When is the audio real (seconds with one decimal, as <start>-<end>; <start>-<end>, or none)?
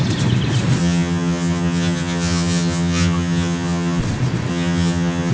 0.0-0.8; 4.0-4.5